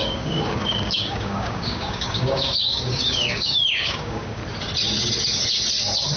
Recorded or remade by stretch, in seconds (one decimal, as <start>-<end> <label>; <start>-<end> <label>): 0.0-4.4 remade; 4.4-6.2 recorded